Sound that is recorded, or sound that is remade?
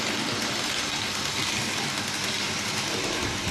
recorded